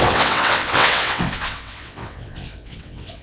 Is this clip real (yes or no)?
no